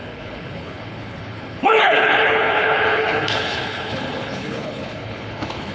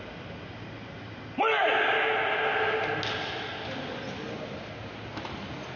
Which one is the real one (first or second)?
second